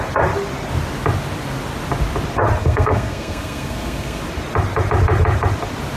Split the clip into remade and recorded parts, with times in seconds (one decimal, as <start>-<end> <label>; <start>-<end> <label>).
0.0-2.6 recorded; 2.6-4.2 remade; 4.2-6.0 recorded